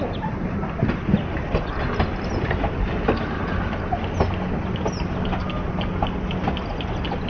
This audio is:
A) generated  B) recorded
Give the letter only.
B